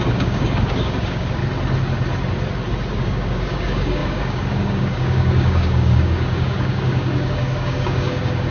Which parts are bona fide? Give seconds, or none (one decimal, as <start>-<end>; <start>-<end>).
1.4-3.0